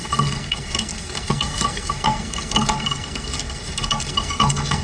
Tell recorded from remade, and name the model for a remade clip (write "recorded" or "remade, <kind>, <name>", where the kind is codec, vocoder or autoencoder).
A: remade, codec, SNAC